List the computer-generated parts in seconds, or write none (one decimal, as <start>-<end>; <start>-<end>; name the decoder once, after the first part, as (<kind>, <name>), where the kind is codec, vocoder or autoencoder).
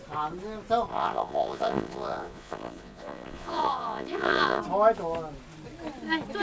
0.9-4.6 (vocoder, Vocos)